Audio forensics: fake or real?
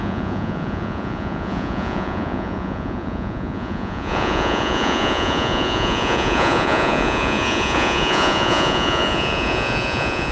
fake